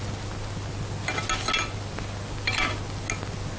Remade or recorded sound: recorded